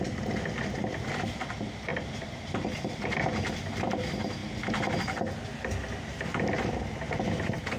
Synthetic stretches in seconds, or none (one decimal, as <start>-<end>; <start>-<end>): 1.9-3.0